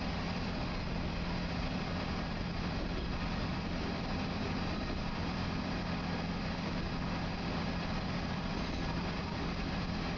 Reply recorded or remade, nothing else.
recorded